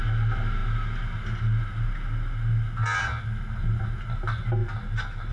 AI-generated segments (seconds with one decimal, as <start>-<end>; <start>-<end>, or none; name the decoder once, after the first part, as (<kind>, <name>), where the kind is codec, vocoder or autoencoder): none